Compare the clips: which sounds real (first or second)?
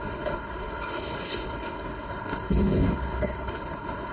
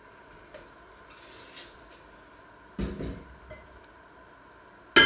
second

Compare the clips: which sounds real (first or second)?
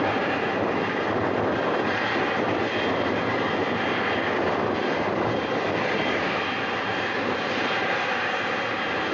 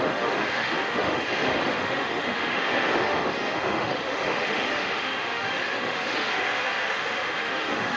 first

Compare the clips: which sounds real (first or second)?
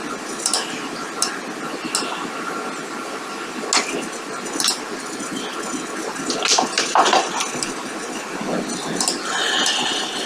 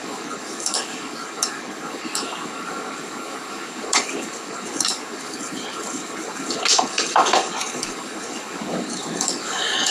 first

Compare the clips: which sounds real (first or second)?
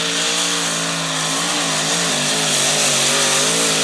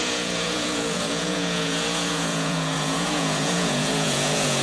first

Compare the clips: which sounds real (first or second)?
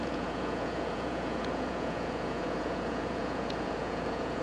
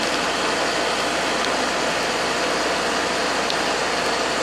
second